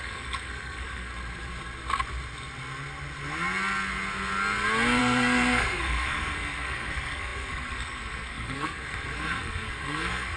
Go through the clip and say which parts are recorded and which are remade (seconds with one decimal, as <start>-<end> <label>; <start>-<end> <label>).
0.0-1.1 remade; 1.1-5.0 recorded; 5.0-10.4 remade